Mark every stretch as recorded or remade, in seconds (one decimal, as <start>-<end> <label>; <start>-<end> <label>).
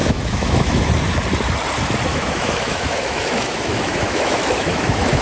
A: 0.0-0.9 remade; 0.9-2.1 recorded; 2.1-5.2 remade